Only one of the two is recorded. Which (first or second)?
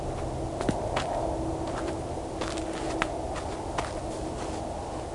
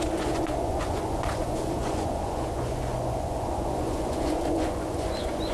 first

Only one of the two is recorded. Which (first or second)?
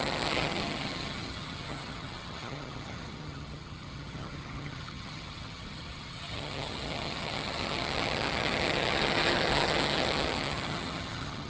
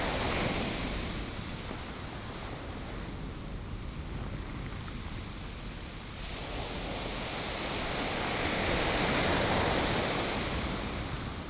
second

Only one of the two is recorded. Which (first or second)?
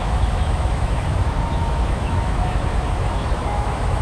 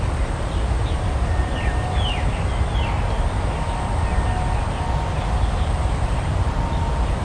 second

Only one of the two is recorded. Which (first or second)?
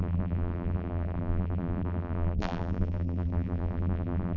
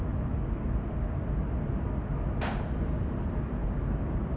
second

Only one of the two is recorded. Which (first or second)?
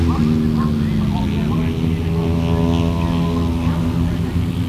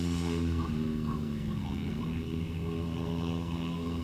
first